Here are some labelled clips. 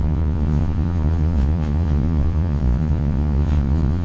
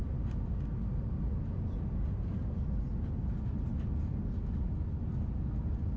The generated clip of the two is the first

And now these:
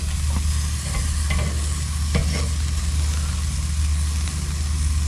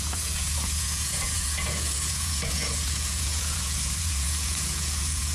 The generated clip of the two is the second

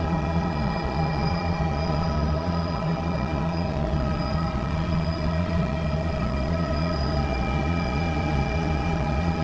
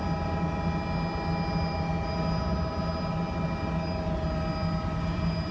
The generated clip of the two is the first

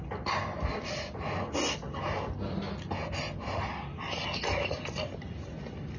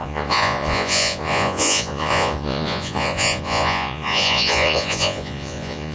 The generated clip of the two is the second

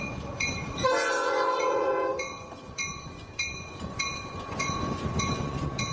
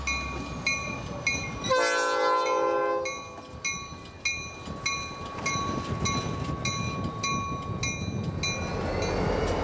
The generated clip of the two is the first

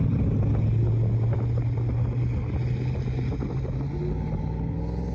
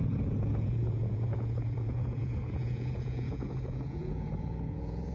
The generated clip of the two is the second